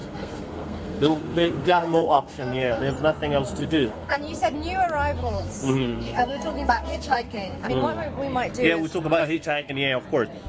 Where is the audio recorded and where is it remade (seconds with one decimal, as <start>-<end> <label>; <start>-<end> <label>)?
0.0-2.8 remade; 2.8-3.6 recorded; 3.6-4.2 remade; 4.2-5.2 recorded; 5.2-7.7 remade; 7.7-9.2 recorded; 9.2-9.7 remade; 9.7-10.5 recorded